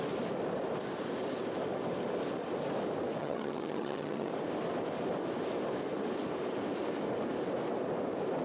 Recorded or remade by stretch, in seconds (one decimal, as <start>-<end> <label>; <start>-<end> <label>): 0.0-3.2 recorded; 3.2-4.3 remade; 4.3-8.4 recorded